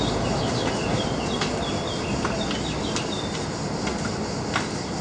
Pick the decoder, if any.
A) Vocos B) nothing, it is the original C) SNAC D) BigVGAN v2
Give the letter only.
B